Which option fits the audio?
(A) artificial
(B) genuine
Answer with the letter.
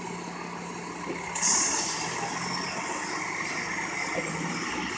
B